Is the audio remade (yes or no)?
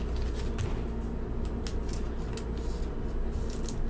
no